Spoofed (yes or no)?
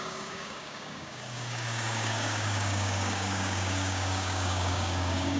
yes